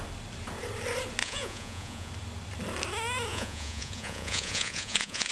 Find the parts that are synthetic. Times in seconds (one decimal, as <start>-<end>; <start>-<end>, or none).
1.2-2.1; 3.3-5.3